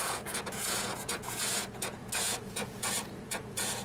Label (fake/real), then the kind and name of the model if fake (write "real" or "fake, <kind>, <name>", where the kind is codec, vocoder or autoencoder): fake, vocoder, Vocos